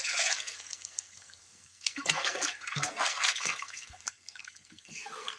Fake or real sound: fake